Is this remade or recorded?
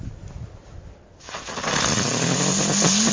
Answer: recorded